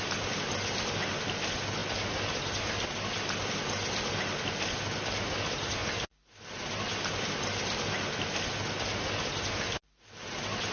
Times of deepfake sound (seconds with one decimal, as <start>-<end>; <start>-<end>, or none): none